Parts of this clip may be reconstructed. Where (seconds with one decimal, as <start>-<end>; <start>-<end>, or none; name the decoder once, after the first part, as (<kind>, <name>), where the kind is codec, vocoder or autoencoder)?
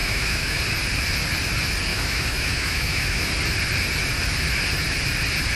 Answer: 0.0-0.6 (autoencoder, DAC-VAE); 1.9-3.3